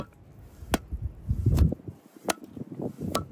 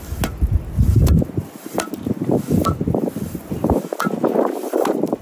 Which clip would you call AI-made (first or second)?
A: second